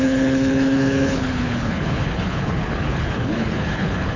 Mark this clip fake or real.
fake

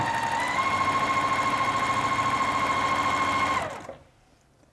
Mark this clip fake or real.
real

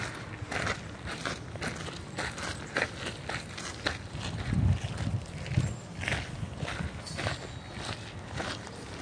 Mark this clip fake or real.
real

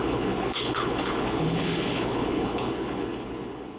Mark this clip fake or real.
fake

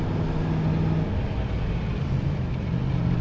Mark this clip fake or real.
real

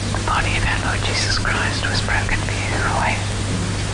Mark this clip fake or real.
real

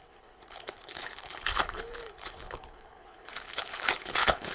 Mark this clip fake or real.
fake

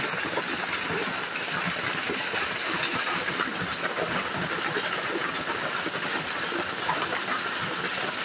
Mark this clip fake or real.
real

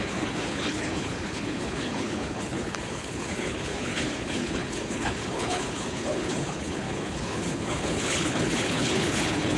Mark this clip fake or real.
fake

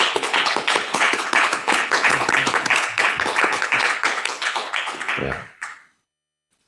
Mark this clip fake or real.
fake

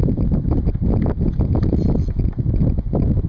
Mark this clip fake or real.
real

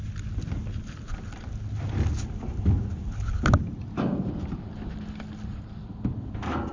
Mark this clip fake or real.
real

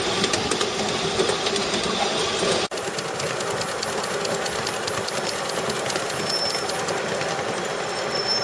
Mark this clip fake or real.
real